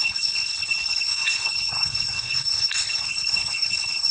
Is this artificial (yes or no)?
yes